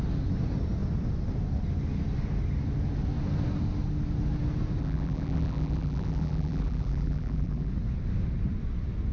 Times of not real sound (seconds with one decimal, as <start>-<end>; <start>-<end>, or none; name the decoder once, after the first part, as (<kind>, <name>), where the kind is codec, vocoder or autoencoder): 4.8-7.7 (vocoder, BigVGAN v2)